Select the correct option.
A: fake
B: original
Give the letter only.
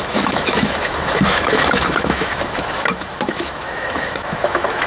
A